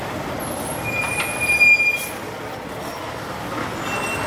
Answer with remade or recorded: recorded